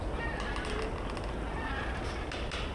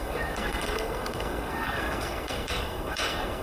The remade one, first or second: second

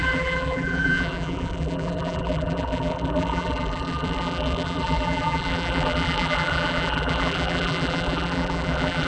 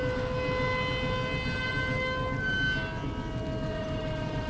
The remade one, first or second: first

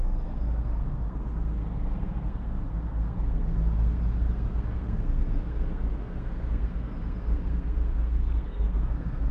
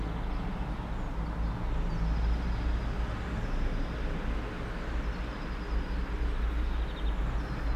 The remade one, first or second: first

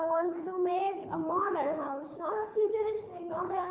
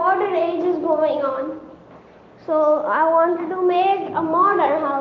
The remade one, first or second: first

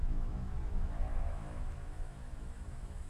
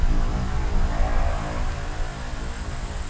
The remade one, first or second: first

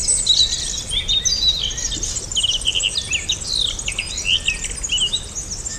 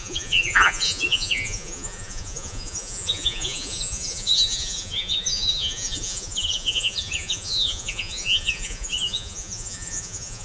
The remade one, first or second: second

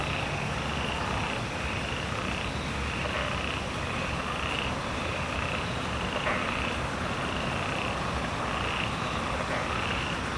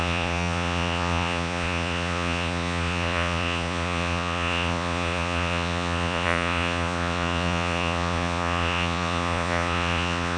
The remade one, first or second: second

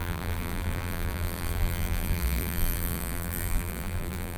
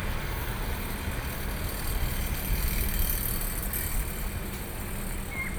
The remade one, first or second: first